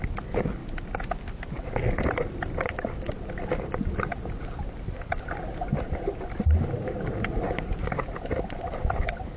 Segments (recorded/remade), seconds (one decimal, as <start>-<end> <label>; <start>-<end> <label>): 0.0-9.4 recorded